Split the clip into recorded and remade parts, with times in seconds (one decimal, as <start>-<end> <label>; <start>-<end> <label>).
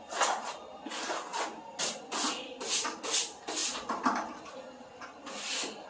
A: 0.0-3.6 recorded; 3.6-4.4 remade; 4.4-5.9 recorded